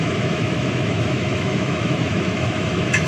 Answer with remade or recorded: remade